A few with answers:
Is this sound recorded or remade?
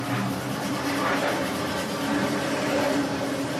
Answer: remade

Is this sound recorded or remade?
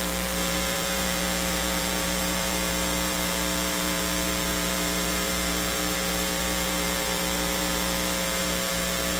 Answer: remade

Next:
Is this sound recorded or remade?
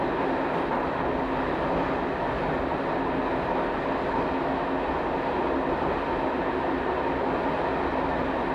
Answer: recorded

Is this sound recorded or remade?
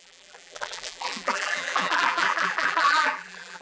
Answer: remade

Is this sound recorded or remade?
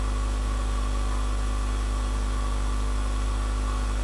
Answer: recorded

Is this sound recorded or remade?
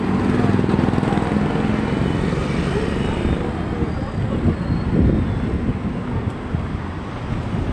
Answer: recorded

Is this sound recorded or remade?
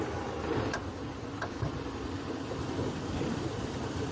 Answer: remade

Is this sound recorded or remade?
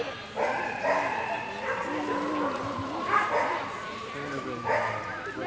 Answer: recorded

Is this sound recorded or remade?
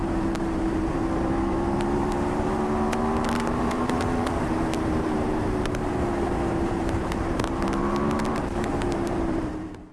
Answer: remade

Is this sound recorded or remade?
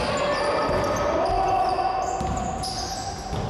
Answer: recorded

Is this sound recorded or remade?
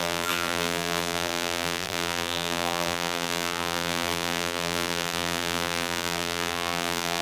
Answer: remade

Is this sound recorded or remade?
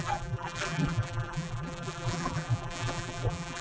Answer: remade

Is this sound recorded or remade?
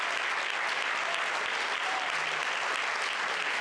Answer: recorded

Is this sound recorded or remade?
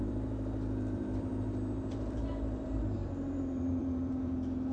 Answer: remade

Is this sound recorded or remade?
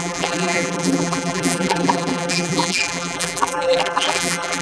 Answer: remade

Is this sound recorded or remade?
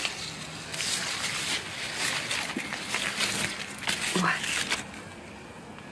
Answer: recorded